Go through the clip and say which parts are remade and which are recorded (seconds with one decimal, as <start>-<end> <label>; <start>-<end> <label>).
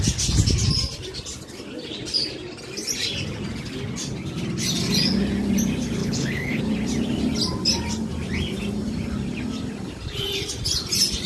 0.0-6.0 recorded; 6.0-6.6 remade; 6.6-11.3 recorded